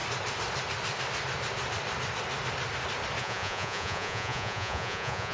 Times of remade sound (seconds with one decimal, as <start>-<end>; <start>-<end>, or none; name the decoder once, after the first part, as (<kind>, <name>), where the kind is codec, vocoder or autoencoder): 3.2-5.3 (vocoder, Vocos)